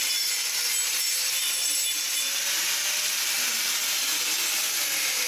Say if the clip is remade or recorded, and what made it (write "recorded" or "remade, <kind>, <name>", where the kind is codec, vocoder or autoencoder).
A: remade, vocoder, BigVGAN v2